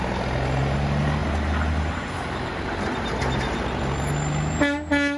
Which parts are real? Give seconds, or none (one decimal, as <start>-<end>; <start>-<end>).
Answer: 0.0-5.2